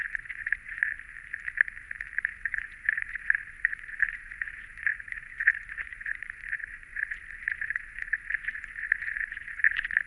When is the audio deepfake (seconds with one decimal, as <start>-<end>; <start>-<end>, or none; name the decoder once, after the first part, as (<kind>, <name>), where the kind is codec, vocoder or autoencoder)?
0.0-0.9 (vocoder, Vocos); 2.2-10.1